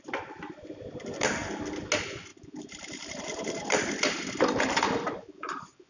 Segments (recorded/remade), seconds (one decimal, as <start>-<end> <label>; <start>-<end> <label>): 0.0-2.3 recorded; 2.3-5.9 remade